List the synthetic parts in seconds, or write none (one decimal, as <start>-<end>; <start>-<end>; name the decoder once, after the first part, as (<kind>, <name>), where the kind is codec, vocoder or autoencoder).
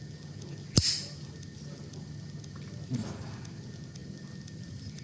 4.0-5.0 (vocoder, BigVGAN v2)